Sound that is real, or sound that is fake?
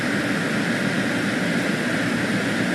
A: real